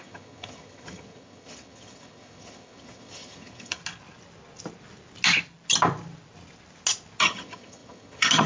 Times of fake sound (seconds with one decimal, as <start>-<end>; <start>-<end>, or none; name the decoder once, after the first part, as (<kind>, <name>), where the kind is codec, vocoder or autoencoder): 0.0-3.8 (vocoder, HiFi-GAN); 7.2-8.5